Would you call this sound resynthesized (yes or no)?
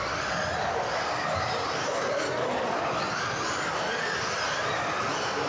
no